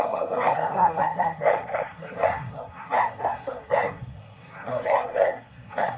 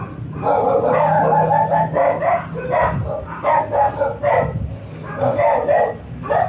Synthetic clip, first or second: first